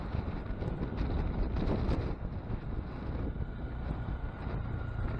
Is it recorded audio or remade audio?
recorded